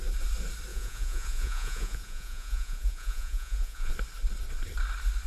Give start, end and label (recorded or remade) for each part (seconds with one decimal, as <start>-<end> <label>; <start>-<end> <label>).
0.0-0.7 recorded; 0.7-3.9 remade; 3.9-5.3 recorded